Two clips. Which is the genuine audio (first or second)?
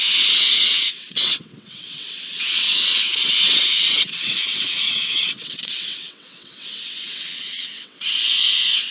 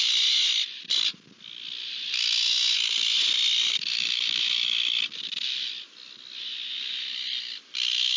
second